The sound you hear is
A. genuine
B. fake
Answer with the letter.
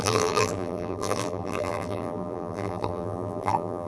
B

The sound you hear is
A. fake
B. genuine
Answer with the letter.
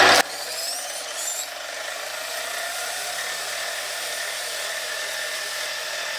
B